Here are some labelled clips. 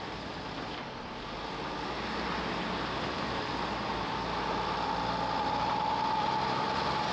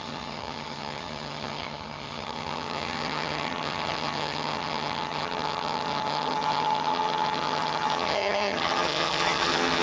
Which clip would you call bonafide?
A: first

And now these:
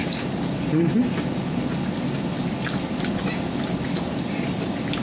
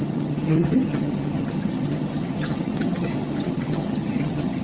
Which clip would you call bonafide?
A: first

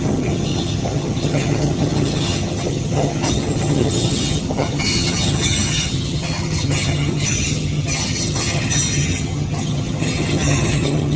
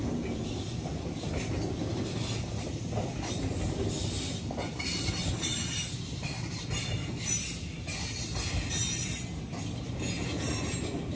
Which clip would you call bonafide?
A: second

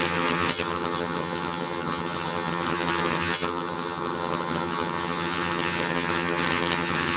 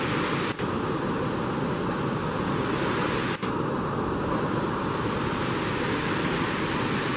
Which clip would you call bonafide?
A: second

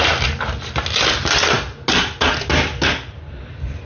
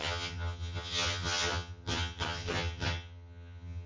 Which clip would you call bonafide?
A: first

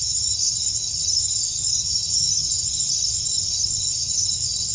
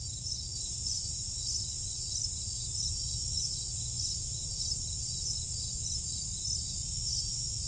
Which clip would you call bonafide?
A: second